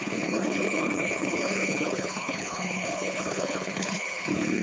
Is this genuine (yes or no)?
no